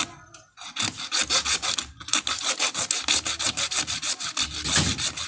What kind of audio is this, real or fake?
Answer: real